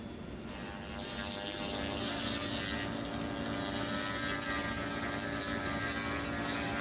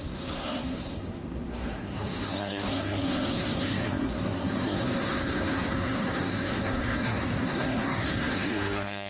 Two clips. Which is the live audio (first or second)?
first